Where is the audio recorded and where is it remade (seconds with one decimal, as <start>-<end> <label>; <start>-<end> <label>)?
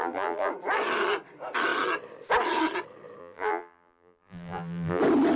0.0-0.5 remade; 0.5-3.2 recorded; 3.2-5.0 remade; 5.0-5.4 recorded